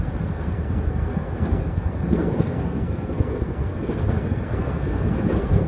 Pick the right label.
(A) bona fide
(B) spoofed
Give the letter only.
B